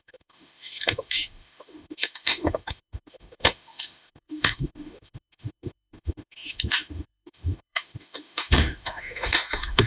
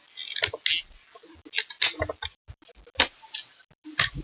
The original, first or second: second